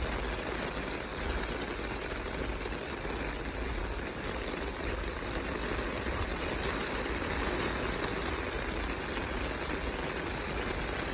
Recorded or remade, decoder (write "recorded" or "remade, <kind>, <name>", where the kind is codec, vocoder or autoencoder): recorded